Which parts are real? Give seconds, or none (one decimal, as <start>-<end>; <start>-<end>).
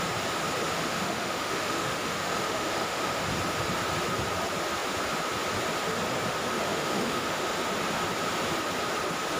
0.0-0.7; 3.2-6.5; 7.5-9.4